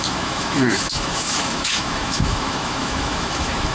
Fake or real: fake